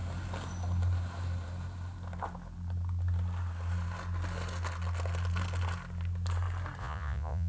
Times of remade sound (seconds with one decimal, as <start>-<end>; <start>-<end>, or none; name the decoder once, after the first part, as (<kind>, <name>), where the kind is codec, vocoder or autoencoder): 6.8-7.5 (vocoder, Vocos)